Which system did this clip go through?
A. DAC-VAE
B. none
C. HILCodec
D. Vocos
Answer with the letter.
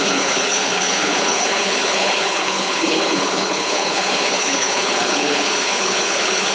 C